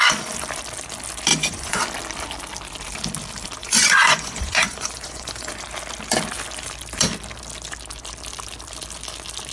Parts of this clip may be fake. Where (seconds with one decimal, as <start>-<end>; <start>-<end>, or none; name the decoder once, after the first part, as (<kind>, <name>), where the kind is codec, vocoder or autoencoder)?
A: 1.3-1.8 (vocoder, Vocos); 3.6-5.5